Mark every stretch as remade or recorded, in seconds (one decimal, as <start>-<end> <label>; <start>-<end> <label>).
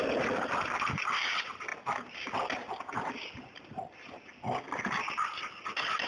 0.0-1.7 remade; 1.7-4.8 recorded; 4.8-6.1 remade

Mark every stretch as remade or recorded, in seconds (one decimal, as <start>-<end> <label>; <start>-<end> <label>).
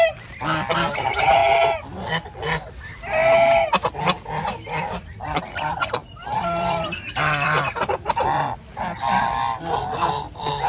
0.0-1.4 remade; 1.4-2.7 recorded; 2.7-3.2 remade; 3.2-4.8 recorded; 4.8-10.7 remade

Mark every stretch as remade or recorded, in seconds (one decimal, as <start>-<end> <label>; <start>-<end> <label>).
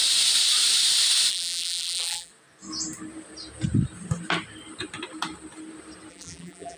0.0-1.3 recorded; 1.3-2.3 remade; 2.3-6.1 recorded; 6.1-6.8 remade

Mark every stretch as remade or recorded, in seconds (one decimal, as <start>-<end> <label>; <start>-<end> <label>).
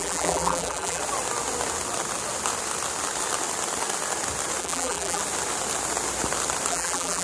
0.0-1.0 remade; 1.0-4.6 recorded; 4.6-5.2 remade; 5.2-6.7 recorded; 6.7-7.2 remade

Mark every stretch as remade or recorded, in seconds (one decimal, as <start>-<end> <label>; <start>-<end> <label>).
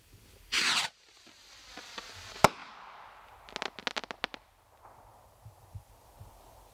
0.0-0.8 recorded; 0.8-1.5 remade; 1.5-5.1 recorded; 5.1-5.9 remade; 5.9-6.7 recorded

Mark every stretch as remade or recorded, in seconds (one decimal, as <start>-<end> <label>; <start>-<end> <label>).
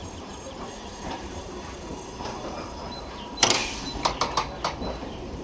0.0-3.6 remade; 3.6-4.9 recorded; 4.9-5.4 remade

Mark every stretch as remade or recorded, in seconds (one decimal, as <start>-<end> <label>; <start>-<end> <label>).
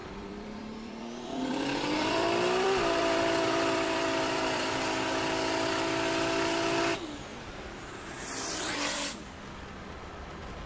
0.0-4.7 remade; 4.7-7.3 recorded; 7.3-8.3 remade; 8.3-10.7 recorded